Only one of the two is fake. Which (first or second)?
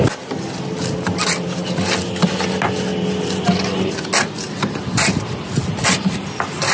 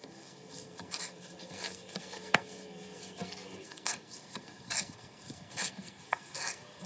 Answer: second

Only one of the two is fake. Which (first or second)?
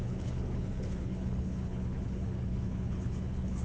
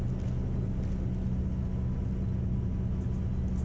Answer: first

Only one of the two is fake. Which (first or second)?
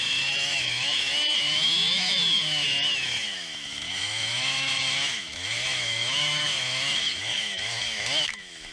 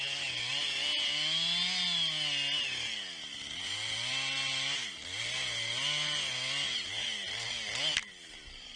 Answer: first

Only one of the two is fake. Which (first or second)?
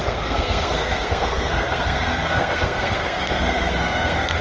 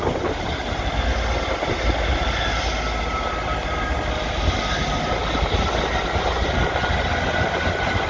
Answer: first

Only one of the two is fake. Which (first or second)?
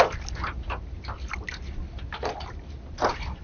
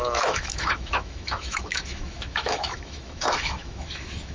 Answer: second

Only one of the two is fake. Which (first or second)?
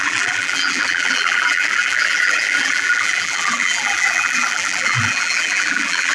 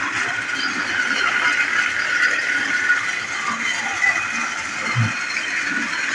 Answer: first